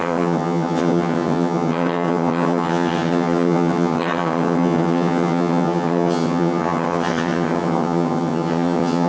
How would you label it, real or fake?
fake